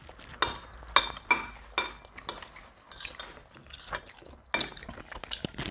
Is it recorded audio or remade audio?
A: recorded